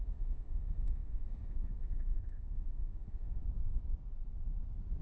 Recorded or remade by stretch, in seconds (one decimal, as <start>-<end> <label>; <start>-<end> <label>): 0.0-3.4 remade; 3.4-5.0 recorded